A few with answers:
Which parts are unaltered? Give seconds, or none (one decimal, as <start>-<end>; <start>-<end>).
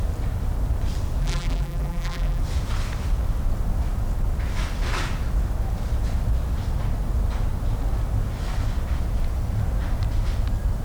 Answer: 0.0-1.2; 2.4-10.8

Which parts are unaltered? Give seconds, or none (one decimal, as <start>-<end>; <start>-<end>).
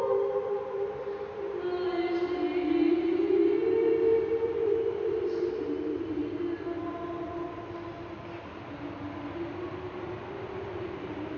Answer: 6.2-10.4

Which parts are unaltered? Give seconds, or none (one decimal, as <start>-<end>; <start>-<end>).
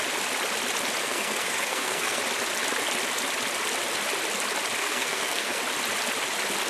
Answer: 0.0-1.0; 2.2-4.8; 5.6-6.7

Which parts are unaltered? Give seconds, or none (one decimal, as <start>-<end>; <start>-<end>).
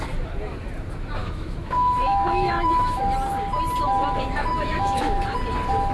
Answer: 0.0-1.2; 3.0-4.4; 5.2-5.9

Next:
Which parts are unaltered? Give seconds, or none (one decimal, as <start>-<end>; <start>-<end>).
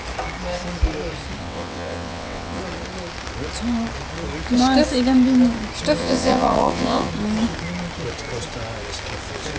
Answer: 0.0-1.4; 2.6-6.0; 7.1-9.6